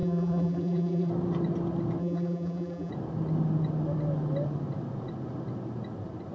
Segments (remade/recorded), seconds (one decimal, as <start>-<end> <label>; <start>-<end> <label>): 0.0-1.1 remade; 1.1-2.0 recorded; 2.0-2.9 remade; 2.9-6.3 recorded